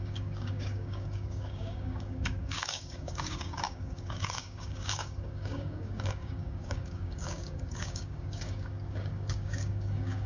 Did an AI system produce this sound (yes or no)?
yes